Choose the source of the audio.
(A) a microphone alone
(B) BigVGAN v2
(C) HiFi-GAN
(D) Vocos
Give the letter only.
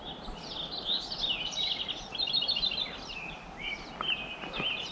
A